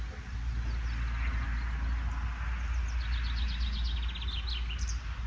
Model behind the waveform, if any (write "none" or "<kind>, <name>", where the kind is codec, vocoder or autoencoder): none